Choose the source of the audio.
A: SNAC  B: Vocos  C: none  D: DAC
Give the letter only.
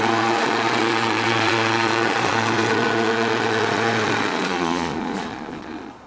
B